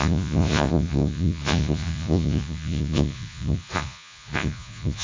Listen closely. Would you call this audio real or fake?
fake